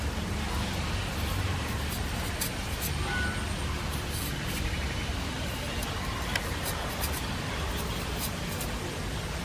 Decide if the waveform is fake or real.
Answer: real